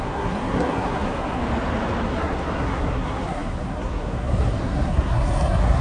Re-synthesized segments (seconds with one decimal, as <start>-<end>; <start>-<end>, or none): 0.0-1.4; 2.0-5.8